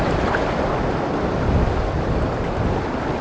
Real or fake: real